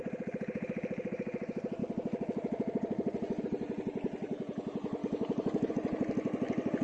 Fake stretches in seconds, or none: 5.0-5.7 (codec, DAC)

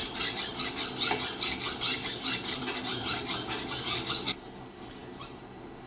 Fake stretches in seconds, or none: 0.0-0.6 (vocoder, BigVGAN v2); 2.0-2.6; 3.0-3.5

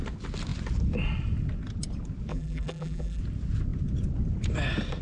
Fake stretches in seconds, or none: 2.3-3.2 (vocoder, BigVGAN v2)